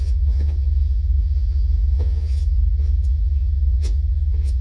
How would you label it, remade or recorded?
remade